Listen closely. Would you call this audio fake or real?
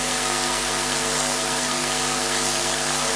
fake